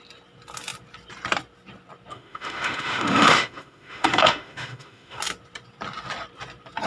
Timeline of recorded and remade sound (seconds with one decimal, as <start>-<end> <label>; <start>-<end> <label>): 0.0-2.1 recorded; 2.1-5.2 remade; 5.2-6.9 recorded